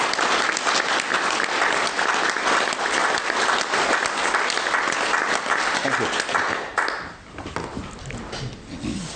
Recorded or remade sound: recorded